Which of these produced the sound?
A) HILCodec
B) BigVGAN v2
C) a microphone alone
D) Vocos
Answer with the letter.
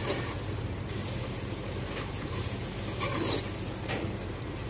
B